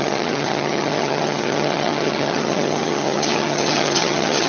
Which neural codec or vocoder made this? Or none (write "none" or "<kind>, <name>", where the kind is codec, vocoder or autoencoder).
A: vocoder, HiFi-GAN